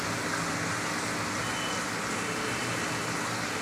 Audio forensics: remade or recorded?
recorded